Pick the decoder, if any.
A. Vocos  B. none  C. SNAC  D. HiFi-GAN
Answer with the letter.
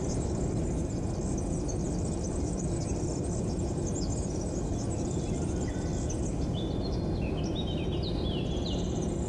B